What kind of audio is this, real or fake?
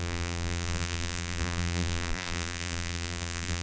fake